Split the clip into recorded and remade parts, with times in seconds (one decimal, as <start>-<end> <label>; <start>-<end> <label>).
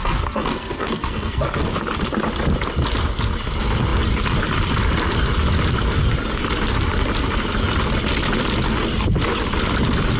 0.0-1.7 remade; 1.7-10.2 recorded